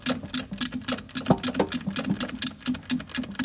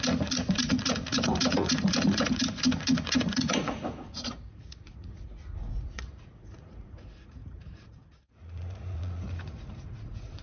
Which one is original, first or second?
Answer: first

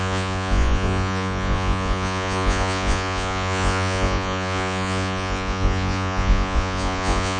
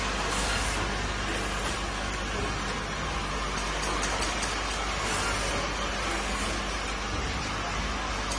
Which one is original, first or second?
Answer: second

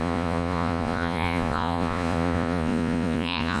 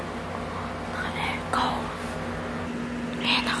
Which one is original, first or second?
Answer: second